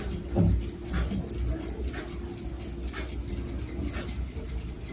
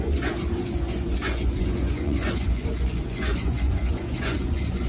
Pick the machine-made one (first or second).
second